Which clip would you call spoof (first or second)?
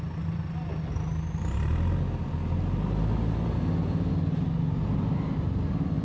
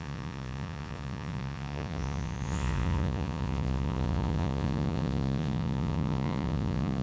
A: second